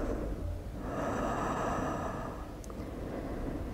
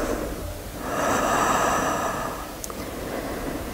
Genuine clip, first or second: first